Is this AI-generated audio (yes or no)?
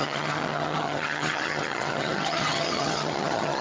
yes